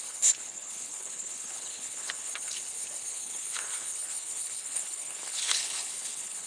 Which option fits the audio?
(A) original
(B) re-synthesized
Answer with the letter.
B